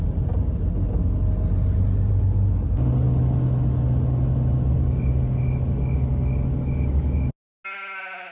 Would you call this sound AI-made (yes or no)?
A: no